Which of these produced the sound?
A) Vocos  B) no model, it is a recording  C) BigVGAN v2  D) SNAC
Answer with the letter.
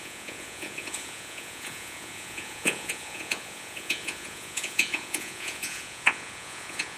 A